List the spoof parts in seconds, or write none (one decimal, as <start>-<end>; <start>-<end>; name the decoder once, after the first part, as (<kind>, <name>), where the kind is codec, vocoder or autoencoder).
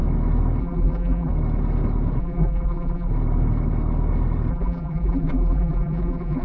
0.6-1.3 (vocoder, BigVGAN v2); 2.2-3.1; 4.5-6.4